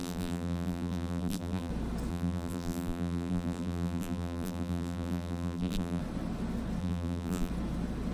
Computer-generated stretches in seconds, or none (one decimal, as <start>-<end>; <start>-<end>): 0.0-1.7; 2.1-6.0; 6.8-7.5